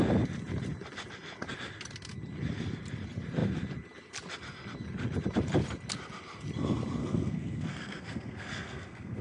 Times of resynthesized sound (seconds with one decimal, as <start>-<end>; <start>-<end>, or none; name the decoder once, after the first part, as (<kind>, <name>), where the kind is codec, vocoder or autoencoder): 7.0-9.2 (codec, SNAC)